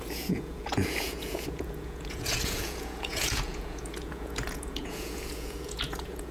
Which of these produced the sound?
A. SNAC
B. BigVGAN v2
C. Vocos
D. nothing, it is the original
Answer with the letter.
C